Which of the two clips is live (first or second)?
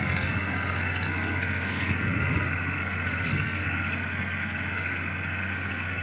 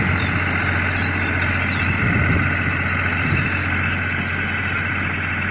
second